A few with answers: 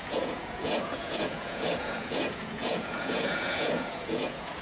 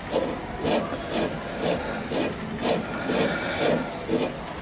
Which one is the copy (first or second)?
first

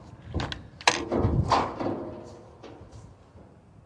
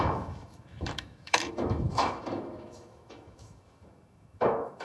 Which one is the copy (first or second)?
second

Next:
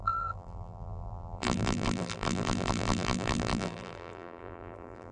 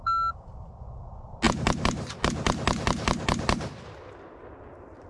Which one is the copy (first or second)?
first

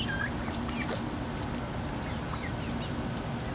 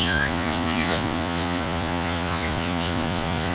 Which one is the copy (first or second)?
second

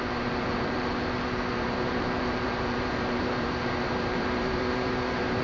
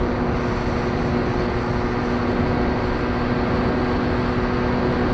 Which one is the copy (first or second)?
first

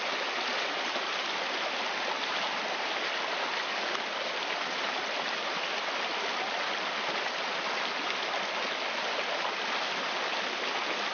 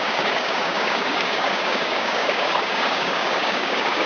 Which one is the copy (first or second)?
second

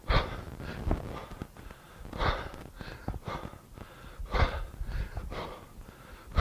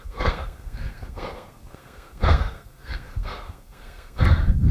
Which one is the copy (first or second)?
second